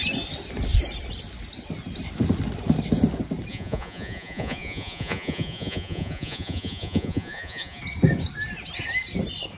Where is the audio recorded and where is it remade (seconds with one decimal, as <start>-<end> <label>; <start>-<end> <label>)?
0.0-3.5 recorded; 3.5-7.8 remade; 7.8-9.6 recorded